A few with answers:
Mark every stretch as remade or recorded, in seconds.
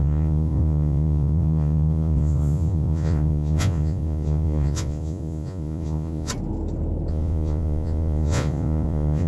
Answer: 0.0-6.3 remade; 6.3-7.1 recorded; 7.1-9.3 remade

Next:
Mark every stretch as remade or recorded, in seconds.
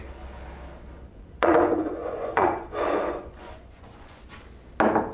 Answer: 0.0-1.1 recorded; 1.1-4.2 remade; 4.2-5.1 recorded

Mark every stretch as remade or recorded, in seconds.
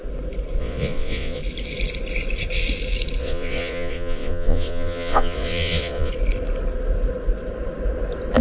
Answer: 0.0-0.6 recorded; 0.6-1.4 remade; 1.4-3.2 recorded; 3.2-6.1 remade; 6.1-8.4 recorded